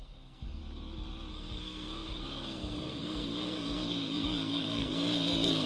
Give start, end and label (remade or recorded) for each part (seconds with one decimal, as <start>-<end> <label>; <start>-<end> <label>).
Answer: 0.0-0.6 remade; 0.6-1.3 recorded; 1.3-5.7 remade